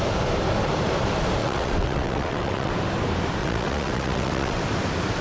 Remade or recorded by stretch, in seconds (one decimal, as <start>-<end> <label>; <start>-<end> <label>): 0.0-1.4 recorded; 1.4-2.7 remade; 2.7-3.4 recorded; 3.4-4.6 remade; 4.6-5.2 recorded